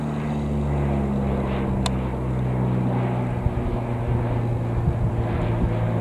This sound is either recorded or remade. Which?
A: recorded